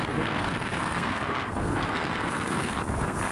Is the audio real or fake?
fake